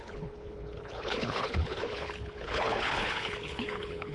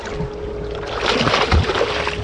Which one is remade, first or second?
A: first